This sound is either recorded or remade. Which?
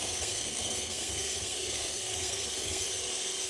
remade